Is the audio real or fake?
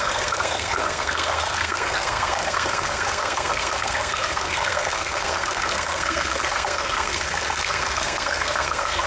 fake